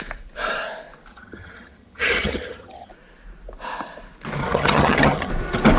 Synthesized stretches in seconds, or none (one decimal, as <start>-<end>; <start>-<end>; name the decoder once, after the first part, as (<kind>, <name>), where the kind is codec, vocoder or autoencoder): 1.1-2.9 (vocoder, HiFi-GAN); 4.4-5.3